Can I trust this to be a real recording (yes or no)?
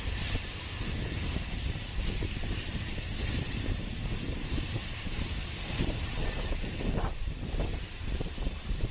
no